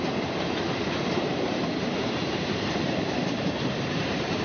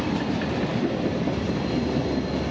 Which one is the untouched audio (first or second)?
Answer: second